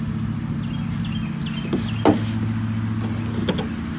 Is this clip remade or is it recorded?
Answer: recorded